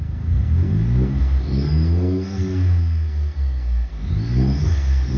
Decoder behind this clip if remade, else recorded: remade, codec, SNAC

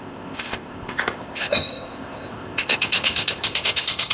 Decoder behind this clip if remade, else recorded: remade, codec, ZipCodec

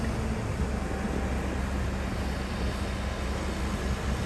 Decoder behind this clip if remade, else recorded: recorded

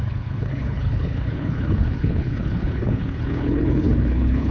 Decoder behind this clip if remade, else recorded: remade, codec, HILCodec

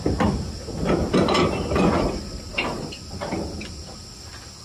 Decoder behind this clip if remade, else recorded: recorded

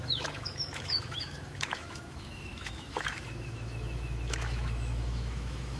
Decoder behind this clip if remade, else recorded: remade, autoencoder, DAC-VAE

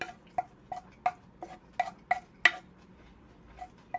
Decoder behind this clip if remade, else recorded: recorded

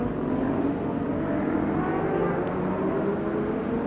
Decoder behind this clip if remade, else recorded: recorded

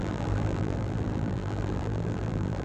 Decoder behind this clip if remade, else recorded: remade, vocoder, BigVGAN v2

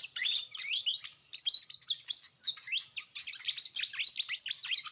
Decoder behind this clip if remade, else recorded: recorded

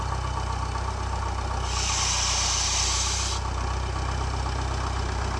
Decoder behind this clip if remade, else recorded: recorded